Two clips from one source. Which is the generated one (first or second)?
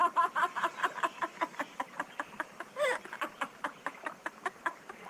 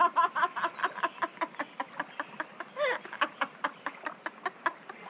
first